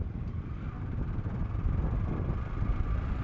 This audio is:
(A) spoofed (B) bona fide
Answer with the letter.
B